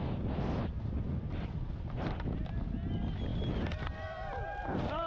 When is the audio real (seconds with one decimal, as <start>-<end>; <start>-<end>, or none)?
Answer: 0.0-3.3